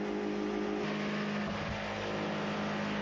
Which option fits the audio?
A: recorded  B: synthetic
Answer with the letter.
A